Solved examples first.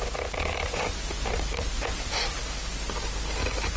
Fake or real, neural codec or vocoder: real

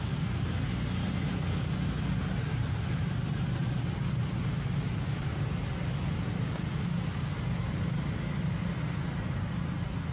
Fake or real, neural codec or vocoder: real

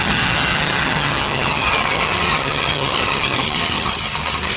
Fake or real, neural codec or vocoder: fake, vocoder, HiFi-GAN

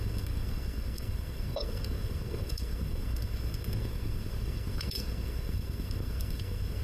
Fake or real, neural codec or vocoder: fake, codec, SNAC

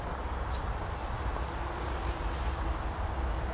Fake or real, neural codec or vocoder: real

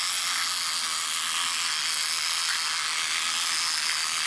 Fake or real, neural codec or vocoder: real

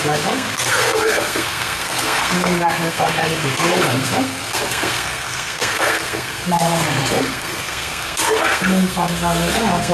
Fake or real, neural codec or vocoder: fake, codec, SNAC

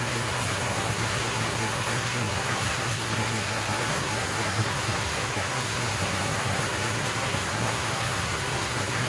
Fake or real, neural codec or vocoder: fake, codec, SNAC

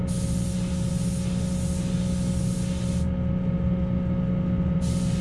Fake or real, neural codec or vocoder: real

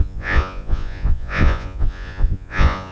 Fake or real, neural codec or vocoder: fake, vocoder, Vocos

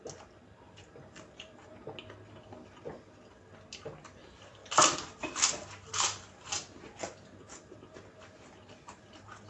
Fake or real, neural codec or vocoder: real